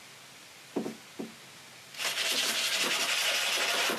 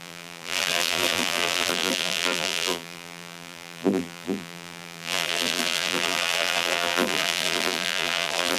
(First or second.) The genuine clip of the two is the first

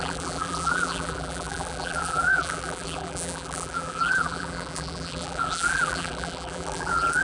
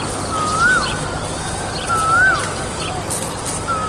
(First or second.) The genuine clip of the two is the second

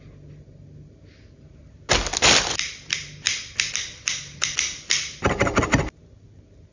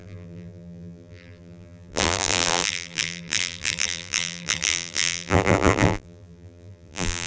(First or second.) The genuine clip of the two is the first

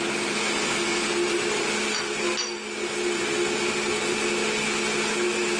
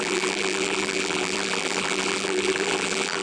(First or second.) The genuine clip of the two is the first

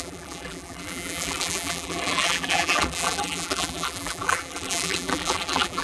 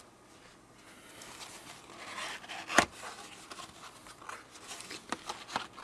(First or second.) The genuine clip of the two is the second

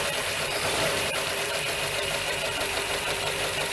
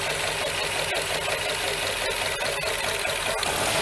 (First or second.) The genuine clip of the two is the second